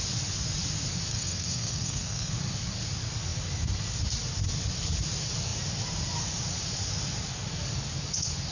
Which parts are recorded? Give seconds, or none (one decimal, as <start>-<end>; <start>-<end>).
0.0-1.1; 2.3-8.5